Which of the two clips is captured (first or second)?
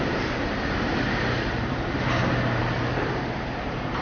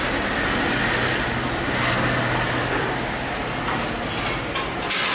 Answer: second